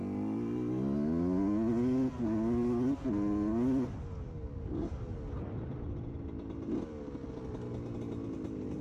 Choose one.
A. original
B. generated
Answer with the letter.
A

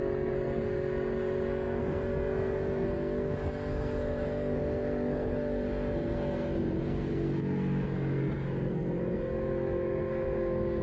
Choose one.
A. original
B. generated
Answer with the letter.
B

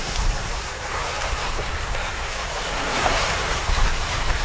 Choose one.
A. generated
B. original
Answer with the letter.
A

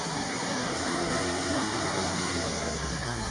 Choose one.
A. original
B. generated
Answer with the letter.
B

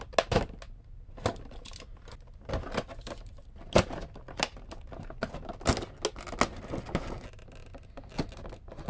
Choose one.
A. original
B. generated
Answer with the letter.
A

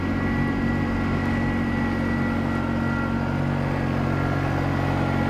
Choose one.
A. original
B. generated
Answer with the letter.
A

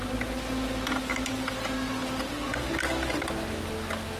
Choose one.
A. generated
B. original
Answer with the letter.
B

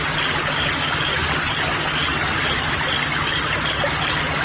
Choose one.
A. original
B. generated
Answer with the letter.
A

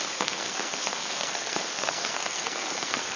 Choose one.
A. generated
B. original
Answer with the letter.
A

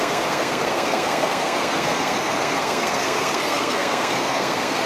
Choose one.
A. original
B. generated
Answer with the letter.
B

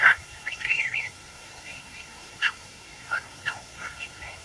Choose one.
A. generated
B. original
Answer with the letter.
A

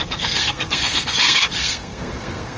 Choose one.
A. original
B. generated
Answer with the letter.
B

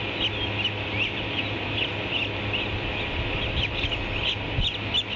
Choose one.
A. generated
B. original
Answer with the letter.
B